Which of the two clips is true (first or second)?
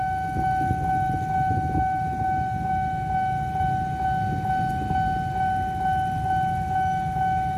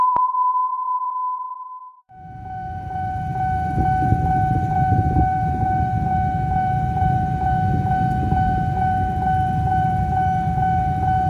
first